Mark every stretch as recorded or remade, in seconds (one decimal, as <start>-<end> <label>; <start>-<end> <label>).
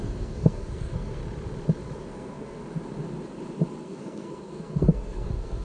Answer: 0.0-1.2 remade; 1.2-2.0 recorded; 2.0-2.6 remade; 2.6-3.8 recorded; 3.8-5.6 remade